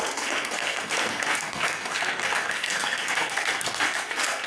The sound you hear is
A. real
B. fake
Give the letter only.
B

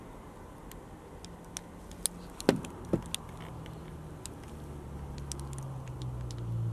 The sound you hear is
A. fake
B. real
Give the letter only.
B